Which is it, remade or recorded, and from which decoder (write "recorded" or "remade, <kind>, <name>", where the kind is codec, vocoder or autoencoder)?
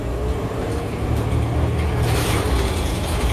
recorded